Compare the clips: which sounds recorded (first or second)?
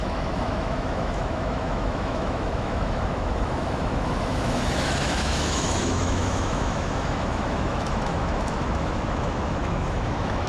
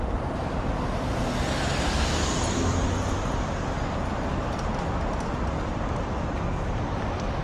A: second